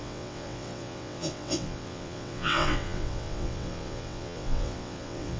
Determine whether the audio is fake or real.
fake